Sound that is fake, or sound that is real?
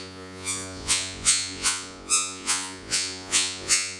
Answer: fake